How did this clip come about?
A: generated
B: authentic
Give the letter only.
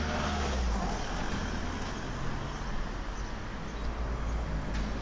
B